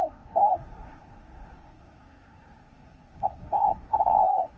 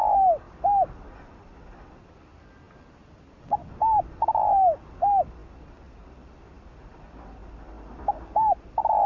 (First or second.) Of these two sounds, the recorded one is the second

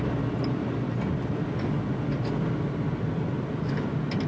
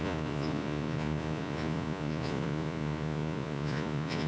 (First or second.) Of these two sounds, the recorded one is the first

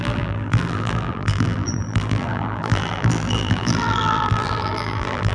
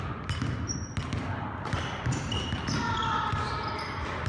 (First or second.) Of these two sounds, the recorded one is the second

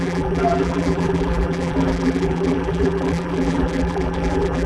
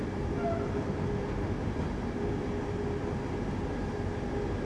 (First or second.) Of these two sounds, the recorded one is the second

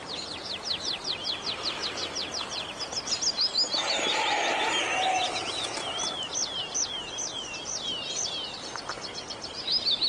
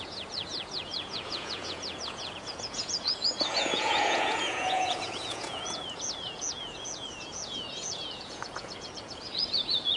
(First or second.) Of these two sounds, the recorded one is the first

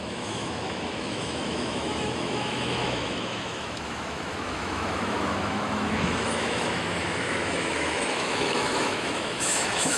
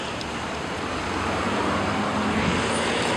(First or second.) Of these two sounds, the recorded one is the second